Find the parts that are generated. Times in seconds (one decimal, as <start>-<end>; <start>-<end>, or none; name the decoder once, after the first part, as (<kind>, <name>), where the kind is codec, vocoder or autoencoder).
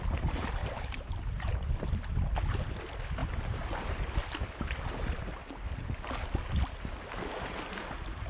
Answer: 0.6-1.9 (vocoder, BigVGAN v2)